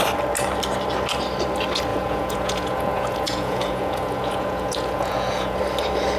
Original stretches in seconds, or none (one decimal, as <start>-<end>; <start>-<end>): 0.0-1.9; 5.6-6.2